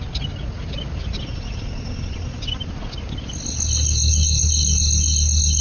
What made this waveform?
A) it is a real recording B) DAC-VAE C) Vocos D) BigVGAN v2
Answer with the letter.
A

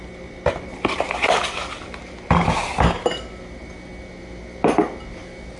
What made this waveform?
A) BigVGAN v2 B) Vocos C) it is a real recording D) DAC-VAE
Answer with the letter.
C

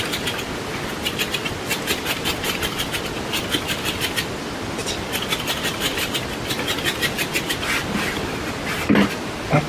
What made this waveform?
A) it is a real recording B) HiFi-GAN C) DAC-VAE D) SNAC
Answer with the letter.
A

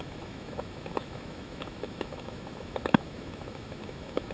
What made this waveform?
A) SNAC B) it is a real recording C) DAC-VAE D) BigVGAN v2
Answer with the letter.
C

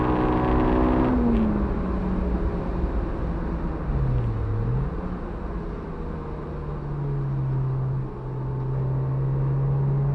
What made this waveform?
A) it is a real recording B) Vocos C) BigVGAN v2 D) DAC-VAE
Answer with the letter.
A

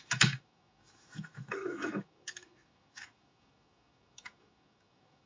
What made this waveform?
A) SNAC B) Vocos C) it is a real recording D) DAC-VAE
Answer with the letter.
D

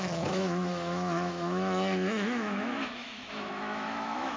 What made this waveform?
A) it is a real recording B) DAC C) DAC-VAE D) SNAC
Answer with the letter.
C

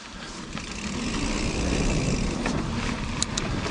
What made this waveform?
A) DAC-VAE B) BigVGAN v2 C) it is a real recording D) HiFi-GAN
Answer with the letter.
C